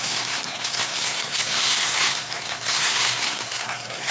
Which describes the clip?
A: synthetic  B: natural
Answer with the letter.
A